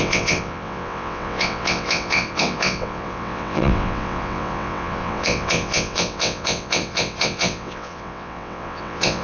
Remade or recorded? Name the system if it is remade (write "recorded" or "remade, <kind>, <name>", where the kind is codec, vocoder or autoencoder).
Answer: remade, vocoder, WaveNeXt